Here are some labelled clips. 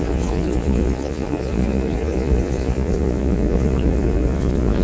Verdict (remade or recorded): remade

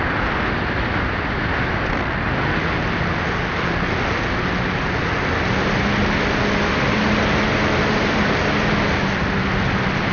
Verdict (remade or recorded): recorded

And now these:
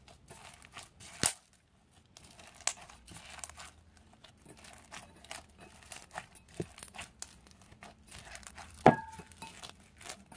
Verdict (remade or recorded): recorded